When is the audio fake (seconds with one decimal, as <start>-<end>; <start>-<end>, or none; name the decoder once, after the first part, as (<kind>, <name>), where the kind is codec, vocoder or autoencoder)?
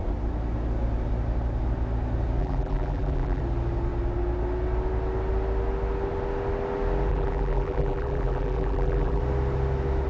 2.4-3.4 (vocoder, BigVGAN v2); 7.1-9.2